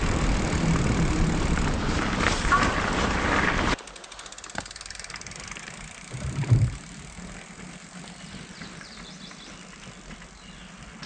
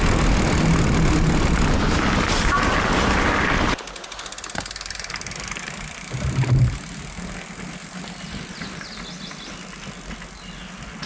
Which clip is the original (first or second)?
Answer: second